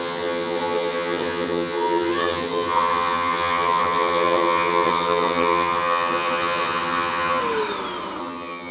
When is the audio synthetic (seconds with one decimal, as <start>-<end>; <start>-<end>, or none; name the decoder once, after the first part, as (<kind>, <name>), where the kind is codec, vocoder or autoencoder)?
0.0-7.4 (vocoder, HiFi-GAN); 8.2-8.7